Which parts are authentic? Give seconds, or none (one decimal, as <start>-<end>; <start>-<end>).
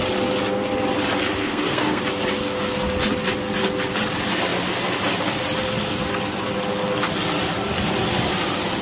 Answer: 0.0-1.4; 2.0-8.8